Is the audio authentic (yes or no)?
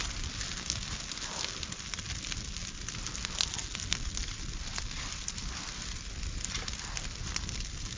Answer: yes